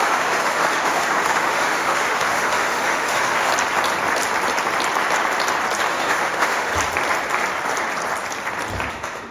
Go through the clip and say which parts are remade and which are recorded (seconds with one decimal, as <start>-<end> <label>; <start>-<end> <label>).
0.0-3.5 remade; 3.5-5.9 recorded; 5.9-6.7 remade; 6.7-8.9 recorded; 8.9-9.3 remade